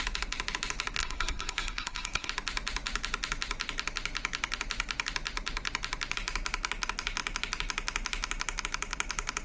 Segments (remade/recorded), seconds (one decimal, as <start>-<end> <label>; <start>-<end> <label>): 0.0-1.0 recorded; 1.0-2.3 remade; 2.3-9.4 recorded